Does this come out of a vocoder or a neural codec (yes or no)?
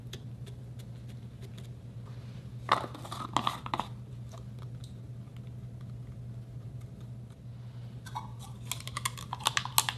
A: no